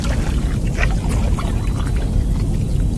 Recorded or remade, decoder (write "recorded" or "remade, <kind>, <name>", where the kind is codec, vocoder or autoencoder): recorded